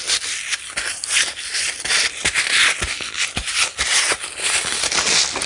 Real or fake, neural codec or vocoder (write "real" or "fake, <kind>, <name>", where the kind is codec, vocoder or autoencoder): fake, vocoder, BigVGAN v2